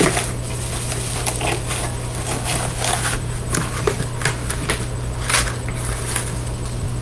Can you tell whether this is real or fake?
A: real